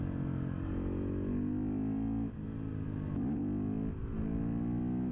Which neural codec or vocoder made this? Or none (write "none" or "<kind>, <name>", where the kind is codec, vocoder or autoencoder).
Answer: none